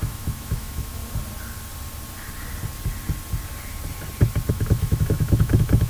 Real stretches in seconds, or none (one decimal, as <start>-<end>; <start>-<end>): 1.0-4.5